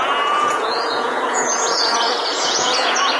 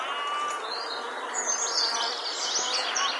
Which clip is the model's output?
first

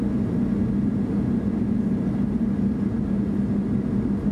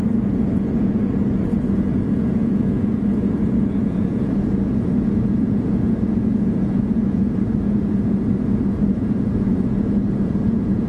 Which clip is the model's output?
second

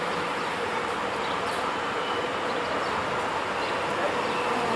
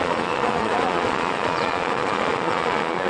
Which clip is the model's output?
second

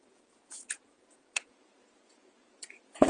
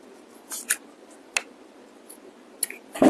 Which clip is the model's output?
first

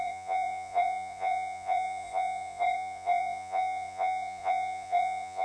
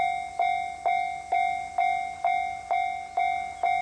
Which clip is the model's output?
first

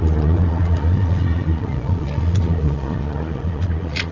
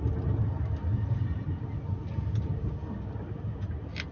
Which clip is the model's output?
first